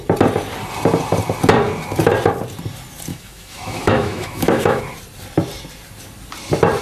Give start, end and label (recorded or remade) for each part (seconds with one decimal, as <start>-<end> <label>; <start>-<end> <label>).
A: 0.0-3.1 recorded; 3.1-4.8 remade; 4.8-6.8 recorded